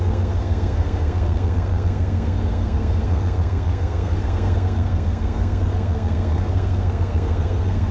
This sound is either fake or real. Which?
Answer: fake